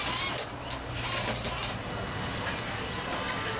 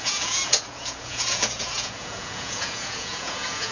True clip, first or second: first